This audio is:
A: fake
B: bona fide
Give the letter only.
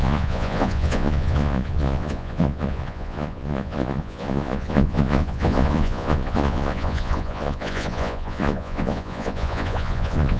A